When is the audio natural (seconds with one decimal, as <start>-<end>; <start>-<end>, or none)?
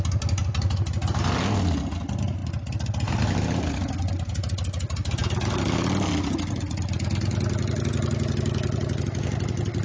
0.0-9.8